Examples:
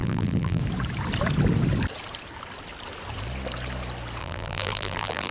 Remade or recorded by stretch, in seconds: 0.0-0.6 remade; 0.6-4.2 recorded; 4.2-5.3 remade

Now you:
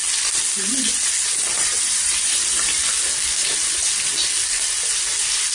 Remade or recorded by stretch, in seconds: 0.0-1.5 recorded; 1.5-2.8 remade; 2.8-5.5 recorded

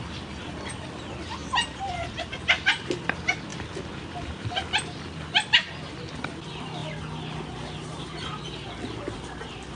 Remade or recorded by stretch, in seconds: 0.0-6.8 remade; 6.8-8.0 recorded; 8.0-9.8 remade